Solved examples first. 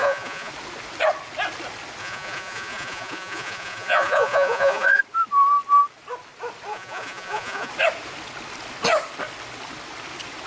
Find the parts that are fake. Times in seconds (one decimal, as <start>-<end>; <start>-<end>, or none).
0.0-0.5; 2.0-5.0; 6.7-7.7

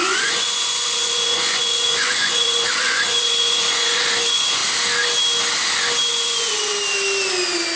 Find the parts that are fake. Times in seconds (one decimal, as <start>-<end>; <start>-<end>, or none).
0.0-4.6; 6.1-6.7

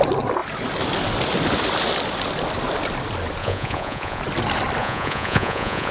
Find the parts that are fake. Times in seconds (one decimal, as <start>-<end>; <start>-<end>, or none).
3.4-4.2; 4.8-5.9

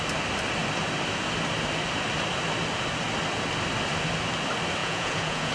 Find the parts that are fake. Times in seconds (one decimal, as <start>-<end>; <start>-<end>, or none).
4.8-5.5